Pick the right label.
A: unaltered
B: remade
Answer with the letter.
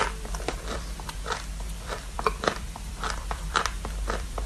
B